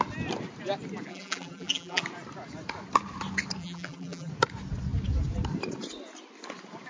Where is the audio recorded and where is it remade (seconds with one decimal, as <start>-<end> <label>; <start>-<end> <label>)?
0.0-1.1 recorded; 1.1-2.0 remade; 2.0-3.6 recorded; 3.6-4.3 remade; 4.3-6.9 recorded